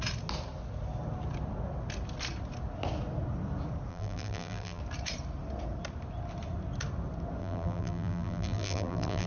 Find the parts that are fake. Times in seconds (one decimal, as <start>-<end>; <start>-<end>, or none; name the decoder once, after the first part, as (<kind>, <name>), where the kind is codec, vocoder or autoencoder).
3.9-4.8 (vocoder, BigVGAN v2); 7.4-9.3